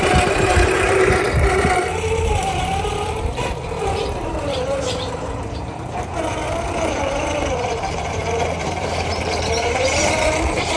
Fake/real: fake